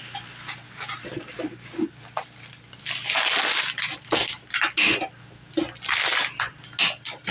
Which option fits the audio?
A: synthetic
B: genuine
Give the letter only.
B